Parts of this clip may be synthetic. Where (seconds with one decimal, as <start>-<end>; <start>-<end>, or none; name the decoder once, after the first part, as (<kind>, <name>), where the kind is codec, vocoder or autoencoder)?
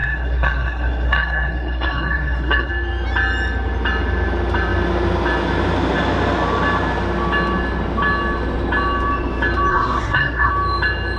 0.0-2.7 (codec, SNAC); 9.7-10.5